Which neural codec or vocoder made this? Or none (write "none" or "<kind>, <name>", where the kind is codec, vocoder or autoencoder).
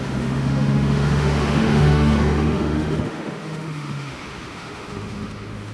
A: autoencoder, DAC-VAE